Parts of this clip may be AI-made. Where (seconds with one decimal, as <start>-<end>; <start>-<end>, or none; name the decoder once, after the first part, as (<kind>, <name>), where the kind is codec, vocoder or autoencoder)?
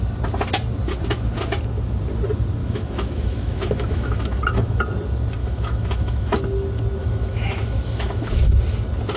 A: 2.6-4.8 (autoencoder, DAC-VAE); 5.4-6.3; 7.0-8.5